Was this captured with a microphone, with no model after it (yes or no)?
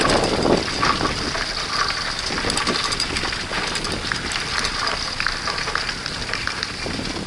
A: yes